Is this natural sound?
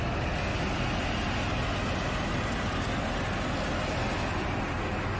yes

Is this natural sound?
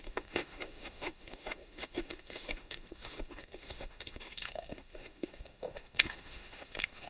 no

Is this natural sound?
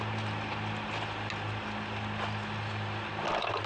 yes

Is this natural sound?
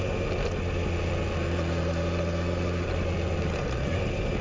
yes